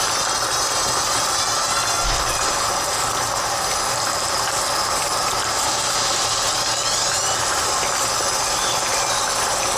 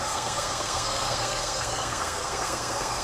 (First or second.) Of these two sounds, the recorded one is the first